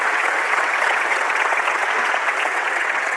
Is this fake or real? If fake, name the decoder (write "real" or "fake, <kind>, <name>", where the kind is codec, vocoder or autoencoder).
fake, vocoder, WaveNeXt